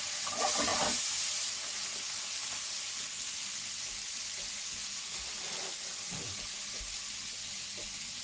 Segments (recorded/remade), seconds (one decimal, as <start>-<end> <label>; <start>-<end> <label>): 0.0-4.8 recorded; 4.8-5.4 remade; 5.4-8.2 recorded